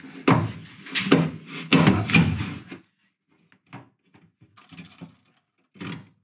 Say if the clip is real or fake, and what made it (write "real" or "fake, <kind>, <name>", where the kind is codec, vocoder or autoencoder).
real